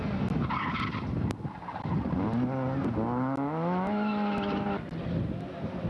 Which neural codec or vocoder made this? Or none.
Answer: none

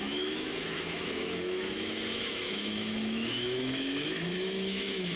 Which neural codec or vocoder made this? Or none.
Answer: autoencoder, DAC-VAE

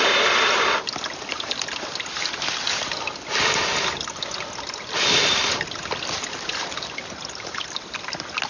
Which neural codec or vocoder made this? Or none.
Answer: none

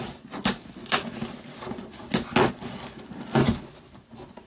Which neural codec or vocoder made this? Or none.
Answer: none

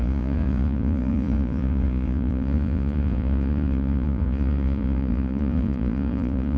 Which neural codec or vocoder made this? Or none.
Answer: vocoder, Vocos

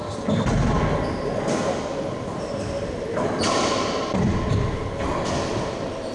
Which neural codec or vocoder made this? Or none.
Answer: none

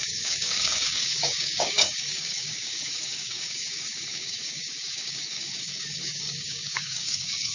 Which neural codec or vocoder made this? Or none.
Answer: codec, DAC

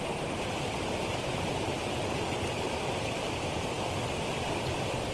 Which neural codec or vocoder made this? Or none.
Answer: none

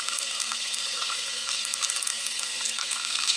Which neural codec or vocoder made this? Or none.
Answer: codec, SNAC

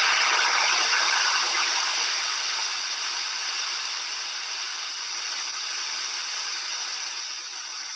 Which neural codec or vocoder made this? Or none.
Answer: none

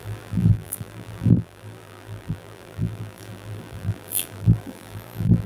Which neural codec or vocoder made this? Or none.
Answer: vocoder, BigVGAN v2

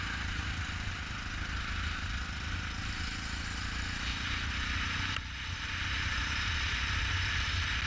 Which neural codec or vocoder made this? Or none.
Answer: none